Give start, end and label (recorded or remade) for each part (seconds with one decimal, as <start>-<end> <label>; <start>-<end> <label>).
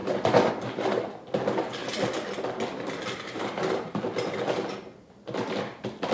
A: 0.0-0.5 remade; 0.5-6.1 recorded